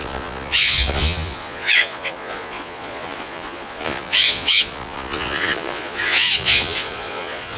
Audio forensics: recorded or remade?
remade